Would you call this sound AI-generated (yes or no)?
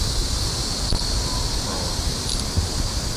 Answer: no